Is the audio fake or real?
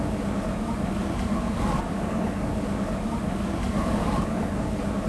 fake